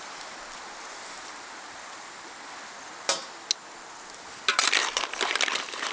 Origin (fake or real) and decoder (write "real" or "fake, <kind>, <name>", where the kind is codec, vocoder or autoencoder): real